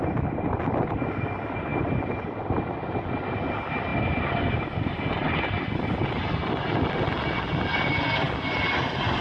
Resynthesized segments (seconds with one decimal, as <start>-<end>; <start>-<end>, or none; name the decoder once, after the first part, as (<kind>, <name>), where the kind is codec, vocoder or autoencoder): none